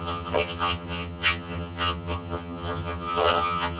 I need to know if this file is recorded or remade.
remade